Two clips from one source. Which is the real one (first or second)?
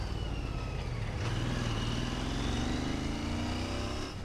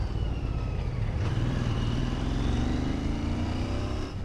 first